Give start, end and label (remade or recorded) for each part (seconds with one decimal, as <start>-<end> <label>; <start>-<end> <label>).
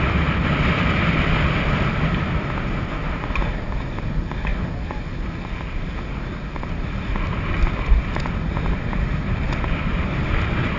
0.0-10.8 recorded